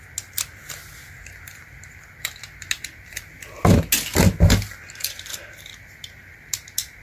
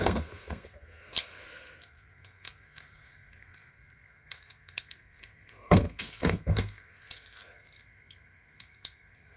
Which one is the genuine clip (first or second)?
first